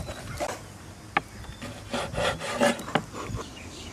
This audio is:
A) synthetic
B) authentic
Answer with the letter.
B